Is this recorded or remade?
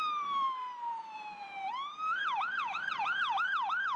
remade